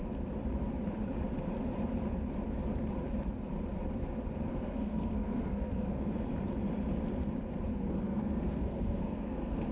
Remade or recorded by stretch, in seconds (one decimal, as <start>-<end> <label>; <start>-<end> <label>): 0.0-4.5 recorded; 4.5-6.1 remade; 6.1-7.7 recorded; 7.7-9.7 remade